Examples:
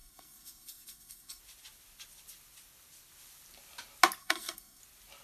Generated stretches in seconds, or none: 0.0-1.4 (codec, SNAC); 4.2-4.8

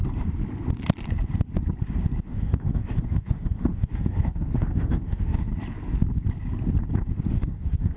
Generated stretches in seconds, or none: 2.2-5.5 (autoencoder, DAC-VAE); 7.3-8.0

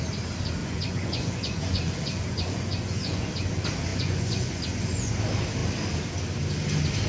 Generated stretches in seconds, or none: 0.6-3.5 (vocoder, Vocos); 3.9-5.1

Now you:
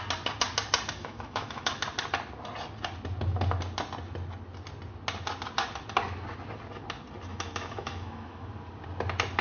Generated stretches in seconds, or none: 1.0-1.7 (autoencoder, DAC-VAE); 7.3-8.5